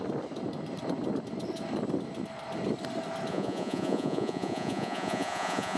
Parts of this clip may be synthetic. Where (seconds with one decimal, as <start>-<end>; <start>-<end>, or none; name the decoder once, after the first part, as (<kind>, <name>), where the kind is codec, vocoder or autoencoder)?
3.3-5.8 (vocoder, Vocos)